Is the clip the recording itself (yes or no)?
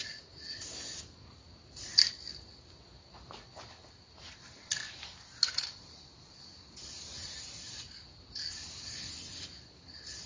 yes